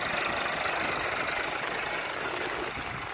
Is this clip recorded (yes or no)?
yes